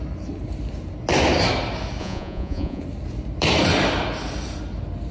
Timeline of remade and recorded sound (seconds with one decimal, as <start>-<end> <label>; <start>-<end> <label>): 0.0-2.0 recorded; 2.0-2.8 remade; 2.8-5.1 recorded